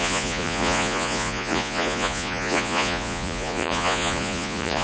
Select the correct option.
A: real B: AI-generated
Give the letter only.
B